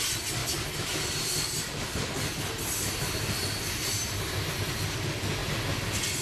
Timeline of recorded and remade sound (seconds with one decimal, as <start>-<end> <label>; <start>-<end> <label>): 0.0-6.2 recorded